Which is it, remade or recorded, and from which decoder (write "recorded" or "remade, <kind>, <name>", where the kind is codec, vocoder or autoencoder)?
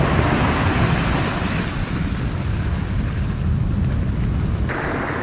recorded